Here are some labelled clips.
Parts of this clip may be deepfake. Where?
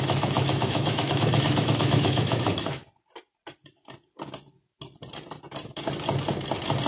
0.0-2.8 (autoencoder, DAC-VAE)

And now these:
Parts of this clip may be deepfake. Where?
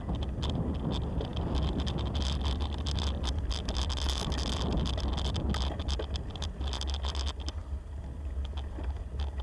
none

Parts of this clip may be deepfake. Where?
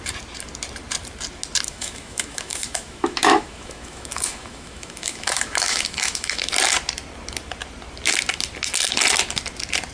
1.7-6.5 (autoencoder, DAC-VAE)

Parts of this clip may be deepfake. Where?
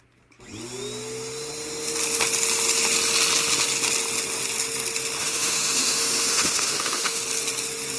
5.2-7.2 (autoencoder, DAC-VAE)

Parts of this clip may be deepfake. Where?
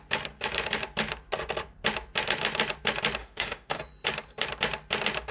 3.2-3.8 (autoencoder, DAC-VAE)